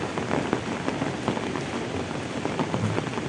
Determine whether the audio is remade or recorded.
recorded